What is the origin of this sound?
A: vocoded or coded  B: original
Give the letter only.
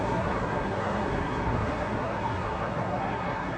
A